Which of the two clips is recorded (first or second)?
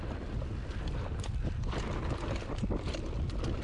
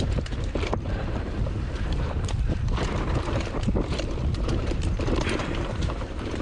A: first